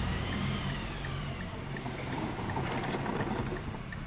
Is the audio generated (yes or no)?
yes